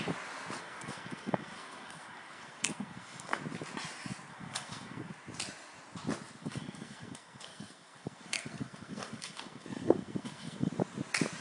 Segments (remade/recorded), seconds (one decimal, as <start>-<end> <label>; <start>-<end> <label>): 0.0-0.6 recorded; 0.6-3.4 remade; 3.4-4.3 recorded; 4.3-5.1 remade; 5.1-6.4 recorded; 6.4-10.7 remade; 10.7-11.4 recorded